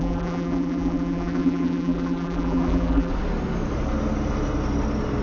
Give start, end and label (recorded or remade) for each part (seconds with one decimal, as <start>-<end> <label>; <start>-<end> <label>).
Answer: 0.0-3.1 remade; 3.1-5.2 recorded